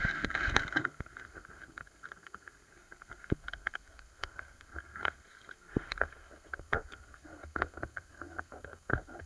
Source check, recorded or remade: remade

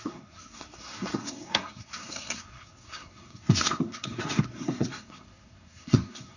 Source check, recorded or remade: remade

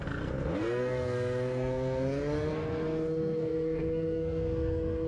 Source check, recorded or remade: remade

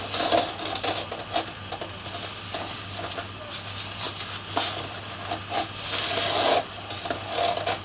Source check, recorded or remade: recorded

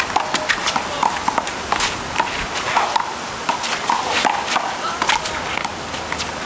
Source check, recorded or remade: recorded